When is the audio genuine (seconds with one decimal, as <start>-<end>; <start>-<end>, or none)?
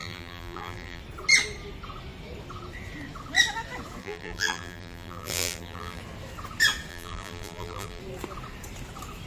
1.0-4.0; 6.0-6.9; 8.0-9.3